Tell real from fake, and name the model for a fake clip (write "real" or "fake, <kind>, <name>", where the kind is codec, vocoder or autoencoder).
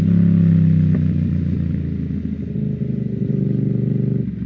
real